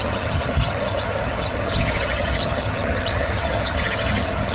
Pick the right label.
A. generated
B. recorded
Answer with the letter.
A